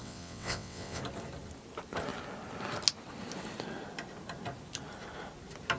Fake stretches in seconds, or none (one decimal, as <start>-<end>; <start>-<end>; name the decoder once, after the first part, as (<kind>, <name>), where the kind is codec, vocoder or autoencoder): 0.0-1.0 (vocoder, WaveNeXt)